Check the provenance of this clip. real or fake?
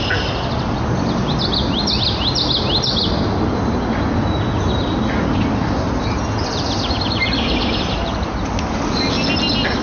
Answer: real